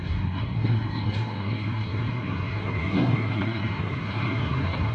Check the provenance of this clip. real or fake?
fake